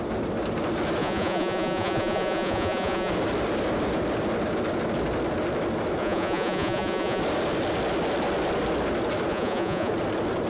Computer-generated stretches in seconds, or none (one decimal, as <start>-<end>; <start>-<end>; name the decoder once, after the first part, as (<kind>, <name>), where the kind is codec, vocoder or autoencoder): 1.0-3.1 (vocoder, Vocos); 6.0-7.2; 9.3-9.9